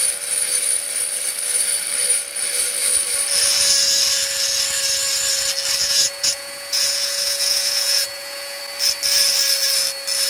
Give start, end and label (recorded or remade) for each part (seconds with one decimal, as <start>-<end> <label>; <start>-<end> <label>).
0.0-5.8 recorded; 5.8-8.6 remade; 8.6-10.3 recorded